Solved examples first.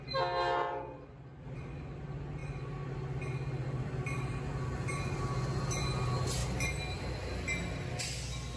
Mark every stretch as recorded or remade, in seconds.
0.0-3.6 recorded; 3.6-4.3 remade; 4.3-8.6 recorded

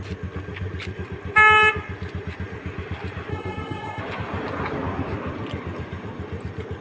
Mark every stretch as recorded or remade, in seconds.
0.0-3.3 recorded; 3.3-4.0 remade; 4.0-6.8 recorded

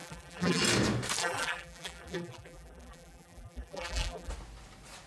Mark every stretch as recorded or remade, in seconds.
0.0-0.6 remade; 0.6-1.2 recorded; 1.2-4.3 remade; 4.3-5.1 recorded

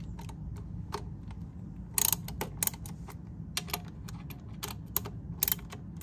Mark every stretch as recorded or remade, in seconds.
0.0-6.0 recorded

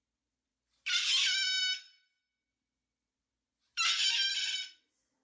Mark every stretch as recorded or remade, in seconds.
0.0-5.2 recorded

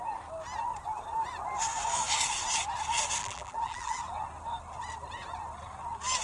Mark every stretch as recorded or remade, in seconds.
0.0-3.2 recorded; 3.2-4.0 remade; 4.0-6.2 recorded

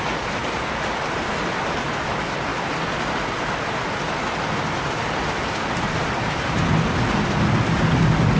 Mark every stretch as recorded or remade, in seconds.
0.0-8.4 recorded